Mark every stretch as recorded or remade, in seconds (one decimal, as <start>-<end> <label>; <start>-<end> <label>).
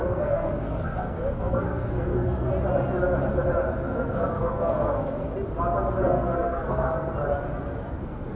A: 0.0-2.5 remade; 2.5-3.7 recorded; 3.7-5.3 remade; 5.3-6.0 recorded; 6.0-7.1 remade; 7.1-8.0 recorded; 8.0-8.4 remade